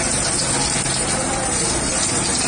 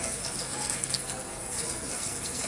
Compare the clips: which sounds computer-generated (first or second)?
second